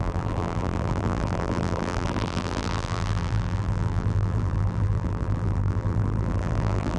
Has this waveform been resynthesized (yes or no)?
yes